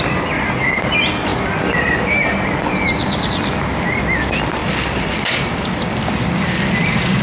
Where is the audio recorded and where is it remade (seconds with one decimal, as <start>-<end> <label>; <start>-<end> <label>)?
0.0-7.2 recorded